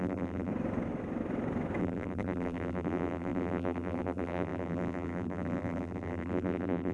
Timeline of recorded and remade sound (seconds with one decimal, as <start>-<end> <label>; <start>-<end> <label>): 0.0-0.5 remade; 0.5-1.8 recorded; 1.8-6.9 remade